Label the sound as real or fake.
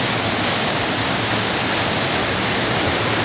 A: real